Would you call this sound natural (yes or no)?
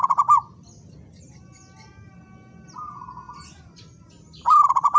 yes